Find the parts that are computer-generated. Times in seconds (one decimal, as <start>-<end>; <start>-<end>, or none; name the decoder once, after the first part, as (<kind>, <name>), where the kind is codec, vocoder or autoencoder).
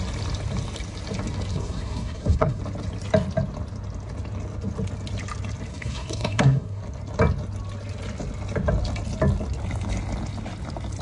1.5-2.6 (codec, SNAC); 5.7-6.8